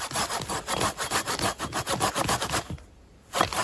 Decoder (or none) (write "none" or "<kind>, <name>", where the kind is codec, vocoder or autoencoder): none